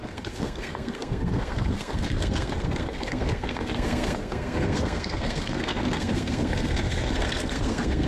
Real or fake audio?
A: fake